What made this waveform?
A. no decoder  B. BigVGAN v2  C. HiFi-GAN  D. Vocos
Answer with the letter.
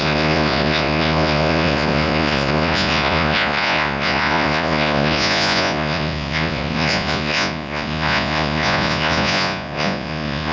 D